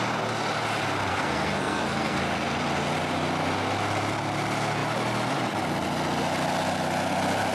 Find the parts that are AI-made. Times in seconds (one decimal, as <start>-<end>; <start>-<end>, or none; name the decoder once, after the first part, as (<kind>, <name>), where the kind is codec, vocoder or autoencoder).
1.1-2.2 (codec, SNAC)